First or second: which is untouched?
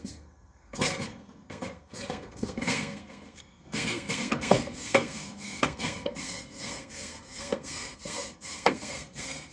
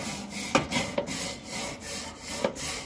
second